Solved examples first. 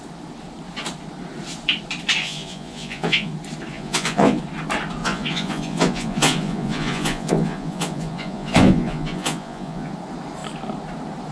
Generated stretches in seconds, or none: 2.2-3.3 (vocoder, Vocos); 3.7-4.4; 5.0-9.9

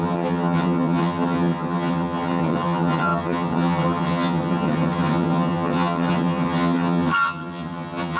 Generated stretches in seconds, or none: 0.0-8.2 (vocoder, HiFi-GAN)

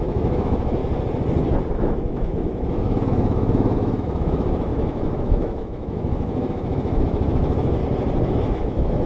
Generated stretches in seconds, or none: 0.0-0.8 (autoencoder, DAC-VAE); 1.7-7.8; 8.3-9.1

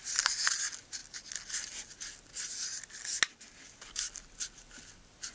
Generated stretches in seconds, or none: none